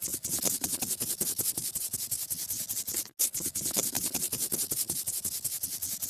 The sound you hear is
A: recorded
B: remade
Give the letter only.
A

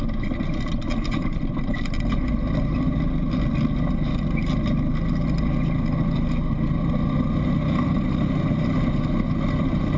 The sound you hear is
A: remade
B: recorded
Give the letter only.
B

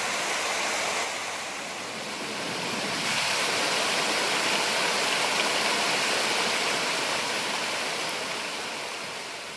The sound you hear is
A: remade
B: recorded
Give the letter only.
B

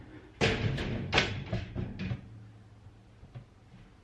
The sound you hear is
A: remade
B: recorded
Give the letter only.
B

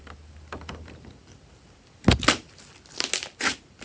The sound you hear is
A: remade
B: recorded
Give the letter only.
B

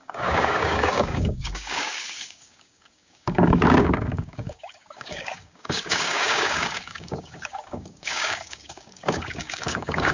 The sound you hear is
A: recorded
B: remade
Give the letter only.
B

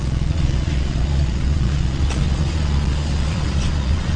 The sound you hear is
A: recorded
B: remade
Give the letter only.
B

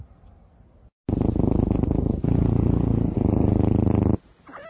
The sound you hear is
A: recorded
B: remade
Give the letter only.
A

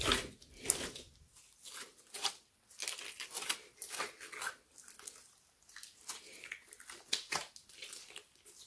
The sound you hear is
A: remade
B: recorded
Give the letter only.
B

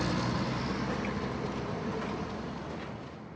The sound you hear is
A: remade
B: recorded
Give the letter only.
B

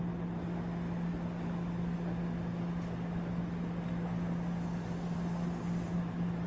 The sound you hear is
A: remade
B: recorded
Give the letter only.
B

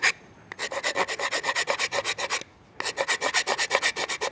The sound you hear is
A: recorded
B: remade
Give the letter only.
A